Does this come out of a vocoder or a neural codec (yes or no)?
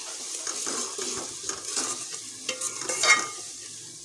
no